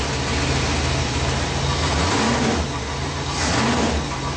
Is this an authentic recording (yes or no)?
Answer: yes